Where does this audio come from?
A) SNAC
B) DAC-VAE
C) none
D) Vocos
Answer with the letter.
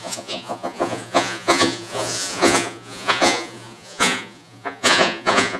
D